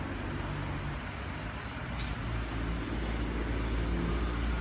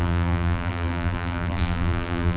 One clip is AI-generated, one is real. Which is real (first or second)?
first